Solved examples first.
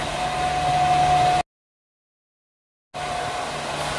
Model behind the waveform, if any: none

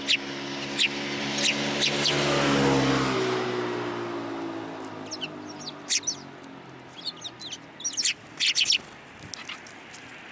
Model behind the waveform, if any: none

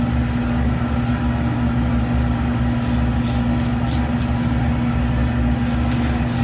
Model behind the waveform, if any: none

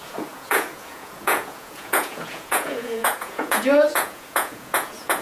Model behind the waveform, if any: vocoder, Vocos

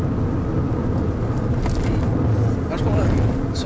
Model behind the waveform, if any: none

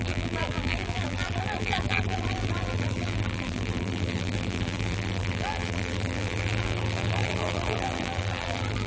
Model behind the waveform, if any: vocoder, BigVGAN v2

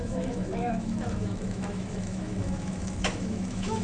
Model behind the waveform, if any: autoencoder, DAC-VAE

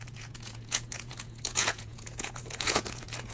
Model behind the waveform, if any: vocoder, Vocos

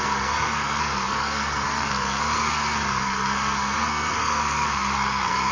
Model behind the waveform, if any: codec, SNAC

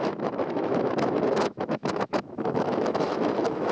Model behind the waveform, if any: autoencoder, DAC-VAE